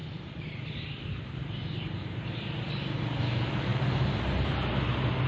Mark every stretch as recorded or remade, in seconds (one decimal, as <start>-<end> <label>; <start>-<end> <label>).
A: 0.0-3.2 remade; 3.2-3.7 recorded; 3.7-4.7 remade; 4.7-5.3 recorded